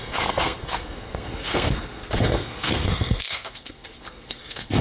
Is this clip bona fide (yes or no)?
no